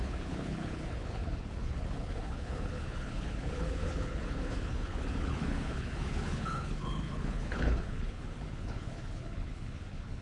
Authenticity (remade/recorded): remade